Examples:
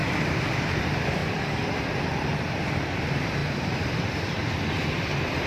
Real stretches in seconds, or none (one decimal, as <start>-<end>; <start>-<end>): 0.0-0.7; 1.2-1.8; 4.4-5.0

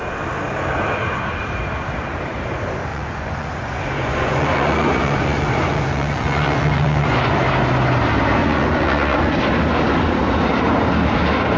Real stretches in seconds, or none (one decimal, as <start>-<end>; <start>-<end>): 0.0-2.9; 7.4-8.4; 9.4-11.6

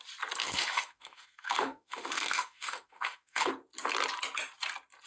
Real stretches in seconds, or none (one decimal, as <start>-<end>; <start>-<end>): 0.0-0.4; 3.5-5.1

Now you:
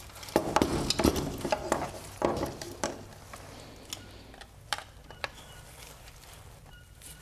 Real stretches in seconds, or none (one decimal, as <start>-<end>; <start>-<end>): 0.4-4.7